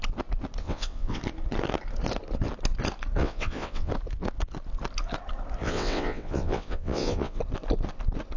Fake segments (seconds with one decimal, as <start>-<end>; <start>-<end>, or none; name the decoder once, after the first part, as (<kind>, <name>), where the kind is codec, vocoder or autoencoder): 0.6-1.2 (vocoder, WaveNeXt); 3.2-3.9; 5.6-7.4